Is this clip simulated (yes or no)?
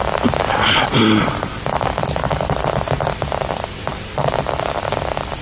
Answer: yes